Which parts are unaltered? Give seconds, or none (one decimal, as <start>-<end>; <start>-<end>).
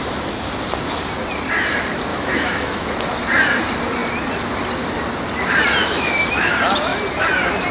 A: 0.0-2.1; 2.9-5.8; 6.5-7.7